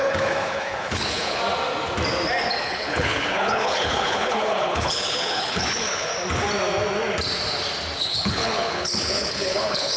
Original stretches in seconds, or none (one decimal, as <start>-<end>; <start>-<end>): 1.4-2.6; 6.1-8.0

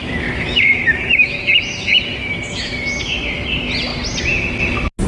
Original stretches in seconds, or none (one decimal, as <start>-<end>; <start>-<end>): 3.1-5.1

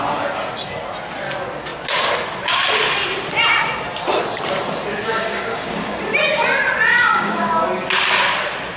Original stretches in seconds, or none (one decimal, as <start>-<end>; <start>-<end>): 0.0-5.1; 6.0-6.9; 7.7-8.8

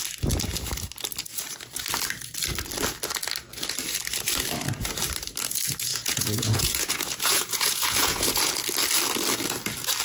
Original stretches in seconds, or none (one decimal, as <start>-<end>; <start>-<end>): 0.0-5.9; 8.5-10.0

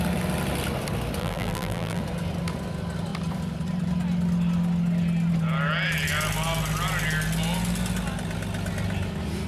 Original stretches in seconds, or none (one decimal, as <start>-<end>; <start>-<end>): 0.0-1.2; 2.0-9.5

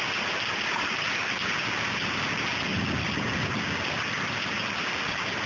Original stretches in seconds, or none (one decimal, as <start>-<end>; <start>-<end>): 0.0-5.5